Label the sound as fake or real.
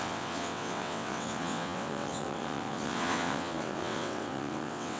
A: fake